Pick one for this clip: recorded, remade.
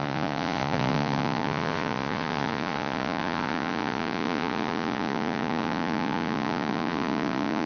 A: remade